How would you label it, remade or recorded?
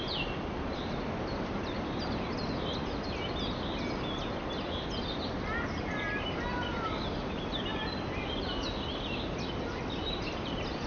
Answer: recorded